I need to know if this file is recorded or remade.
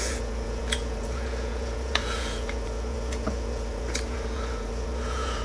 remade